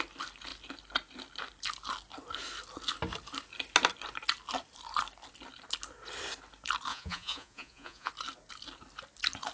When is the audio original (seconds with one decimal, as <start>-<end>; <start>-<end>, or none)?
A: 0.0-6.9; 8.1-9.5